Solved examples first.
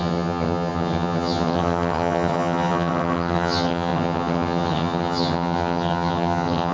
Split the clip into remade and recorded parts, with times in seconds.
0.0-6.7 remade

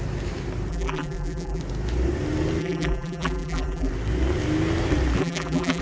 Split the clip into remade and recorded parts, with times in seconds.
0.0-0.7 recorded; 0.7-1.6 remade; 1.6-2.6 recorded; 2.6-3.9 remade; 3.9-5.2 recorded; 5.2-5.8 remade

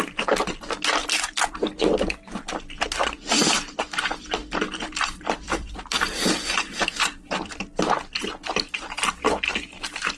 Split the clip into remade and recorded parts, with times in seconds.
0.0-1.0 recorded; 1.0-1.5 remade; 1.5-4.4 recorded; 4.4-7.5 remade; 7.5-10.2 recorded

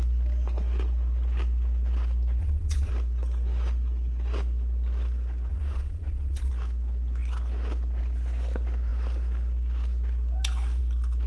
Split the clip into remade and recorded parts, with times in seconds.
0.0-2.4 recorded; 2.4-2.9 remade; 2.9-5.5 recorded; 5.5-6.5 remade; 6.5-11.3 recorded

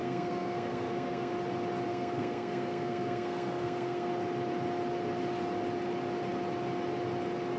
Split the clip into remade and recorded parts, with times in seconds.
0.0-1.3 remade; 1.3-1.9 recorded; 1.9-4.1 remade; 4.1-7.6 recorded

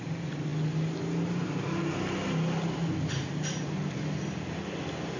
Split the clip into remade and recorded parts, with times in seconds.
0.0-5.2 recorded